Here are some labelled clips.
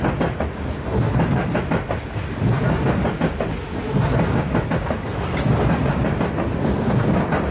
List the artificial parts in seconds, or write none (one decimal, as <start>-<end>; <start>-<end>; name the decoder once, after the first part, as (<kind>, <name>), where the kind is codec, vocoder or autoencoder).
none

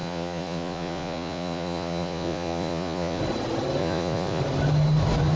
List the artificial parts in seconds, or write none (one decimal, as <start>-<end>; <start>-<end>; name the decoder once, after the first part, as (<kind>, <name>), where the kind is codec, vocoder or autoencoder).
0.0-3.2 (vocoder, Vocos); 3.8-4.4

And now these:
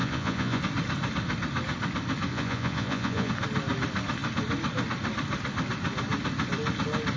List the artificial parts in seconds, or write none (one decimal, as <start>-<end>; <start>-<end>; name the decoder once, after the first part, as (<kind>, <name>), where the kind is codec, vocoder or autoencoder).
0.0-0.6 (vocoder, Vocos); 2.3-3.3

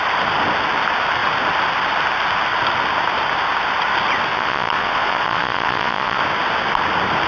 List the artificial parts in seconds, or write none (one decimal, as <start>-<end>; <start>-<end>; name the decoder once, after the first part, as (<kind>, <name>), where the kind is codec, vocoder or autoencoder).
4.3-6.2 (vocoder, Vocos)

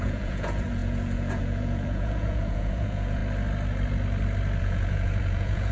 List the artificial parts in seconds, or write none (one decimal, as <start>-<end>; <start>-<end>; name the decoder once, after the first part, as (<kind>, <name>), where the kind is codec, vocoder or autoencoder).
0.0-3.2 (vocoder, Vocos); 4.6-5.7

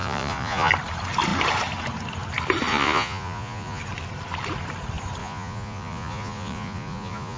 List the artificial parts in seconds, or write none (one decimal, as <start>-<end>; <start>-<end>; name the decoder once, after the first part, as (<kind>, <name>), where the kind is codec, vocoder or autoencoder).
0.0-0.7 (vocoder, Vocos); 2.7-3.8; 5.2-7.4

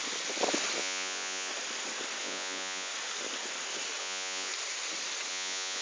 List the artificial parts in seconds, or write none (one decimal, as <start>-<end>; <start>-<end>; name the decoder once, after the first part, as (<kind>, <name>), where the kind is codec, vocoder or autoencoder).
0.8-1.5 (vocoder, Vocos); 2.2-2.9; 4.0-4.5; 5.3-5.8